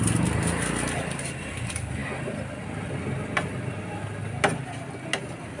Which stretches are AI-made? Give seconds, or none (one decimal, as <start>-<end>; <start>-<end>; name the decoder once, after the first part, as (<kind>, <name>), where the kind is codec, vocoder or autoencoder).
none